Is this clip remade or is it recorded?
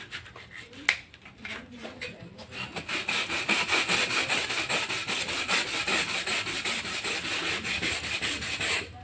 recorded